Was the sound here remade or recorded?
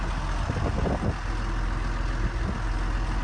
recorded